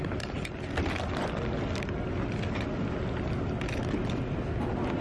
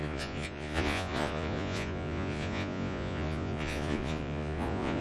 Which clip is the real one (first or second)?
first